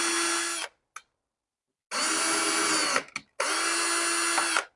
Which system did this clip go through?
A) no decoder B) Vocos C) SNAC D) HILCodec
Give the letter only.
A